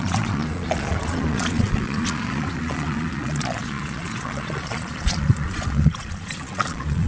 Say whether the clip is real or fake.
fake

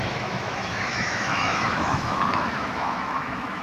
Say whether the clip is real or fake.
fake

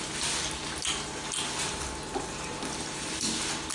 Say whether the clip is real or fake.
real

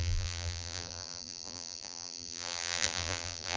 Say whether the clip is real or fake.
fake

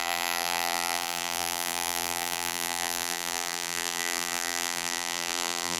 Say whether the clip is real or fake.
fake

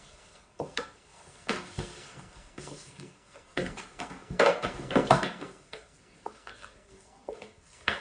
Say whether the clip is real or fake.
fake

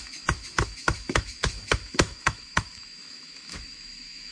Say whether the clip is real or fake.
fake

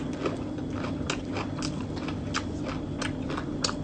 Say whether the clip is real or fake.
real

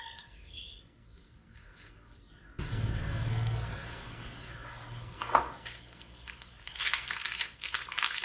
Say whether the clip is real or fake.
fake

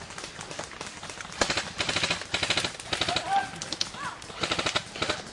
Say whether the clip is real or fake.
real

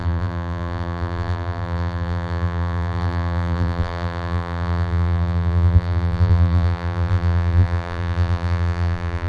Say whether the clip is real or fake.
fake